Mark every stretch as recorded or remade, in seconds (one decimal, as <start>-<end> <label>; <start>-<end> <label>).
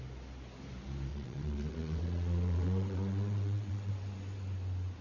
0.0-1.1 recorded; 1.1-3.9 remade; 3.9-5.0 recorded